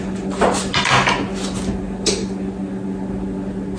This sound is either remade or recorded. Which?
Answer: recorded